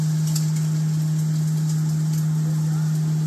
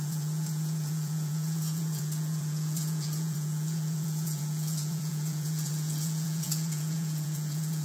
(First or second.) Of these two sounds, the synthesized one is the second